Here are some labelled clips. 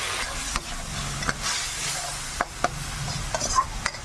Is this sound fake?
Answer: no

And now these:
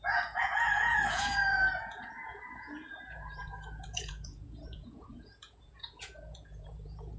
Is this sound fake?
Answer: yes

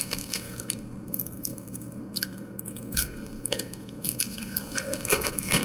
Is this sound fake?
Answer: yes